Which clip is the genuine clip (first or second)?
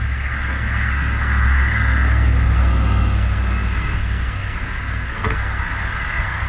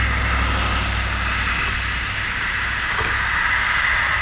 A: second